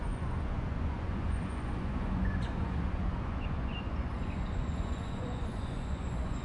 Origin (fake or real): fake